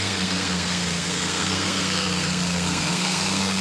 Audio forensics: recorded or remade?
remade